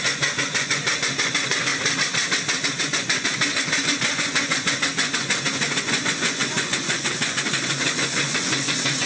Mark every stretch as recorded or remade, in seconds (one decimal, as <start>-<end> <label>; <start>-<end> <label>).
0.0-1.7 remade; 1.7-2.8 recorded; 2.8-9.1 remade

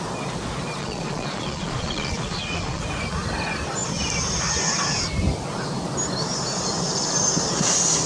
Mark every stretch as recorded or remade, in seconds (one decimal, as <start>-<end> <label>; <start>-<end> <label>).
0.0-0.8 recorded; 0.8-2.8 remade; 2.8-8.1 recorded

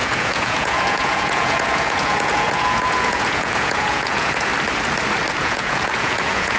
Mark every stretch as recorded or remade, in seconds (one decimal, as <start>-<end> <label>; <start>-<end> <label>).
0.0-4.5 remade; 4.5-5.4 recorded; 5.4-6.6 remade